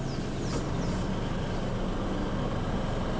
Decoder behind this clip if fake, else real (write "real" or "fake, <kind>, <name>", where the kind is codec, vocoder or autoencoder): real